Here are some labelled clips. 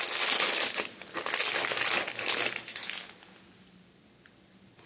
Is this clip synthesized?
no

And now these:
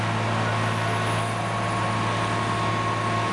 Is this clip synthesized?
no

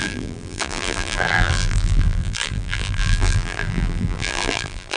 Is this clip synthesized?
yes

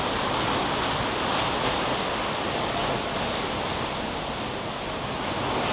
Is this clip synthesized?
no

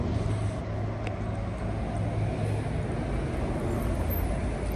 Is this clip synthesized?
no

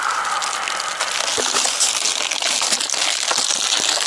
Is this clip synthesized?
no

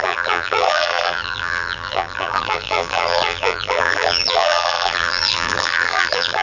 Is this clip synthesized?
yes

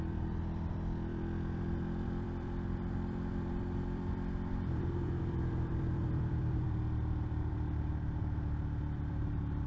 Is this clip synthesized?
yes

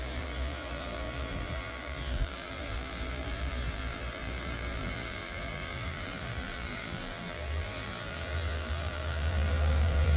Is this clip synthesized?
yes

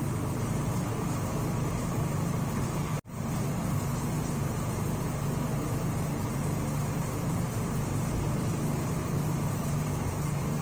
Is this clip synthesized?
yes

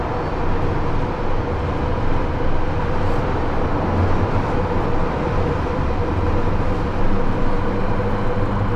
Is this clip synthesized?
no